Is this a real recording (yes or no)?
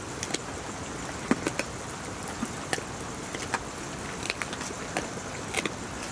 yes